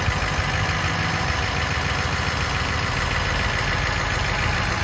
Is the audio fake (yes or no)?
no